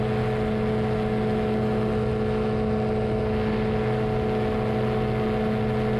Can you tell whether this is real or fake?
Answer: real